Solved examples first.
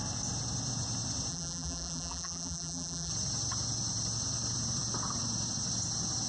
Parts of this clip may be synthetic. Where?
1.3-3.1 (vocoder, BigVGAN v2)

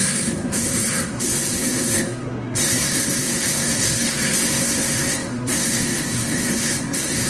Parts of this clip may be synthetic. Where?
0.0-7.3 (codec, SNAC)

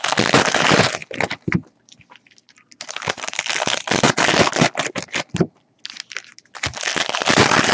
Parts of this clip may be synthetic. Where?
none

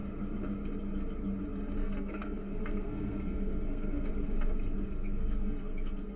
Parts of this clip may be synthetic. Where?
1.8-4.1 (codec, SNAC); 4.9-6.2